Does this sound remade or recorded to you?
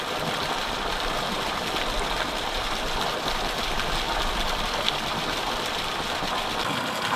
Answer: remade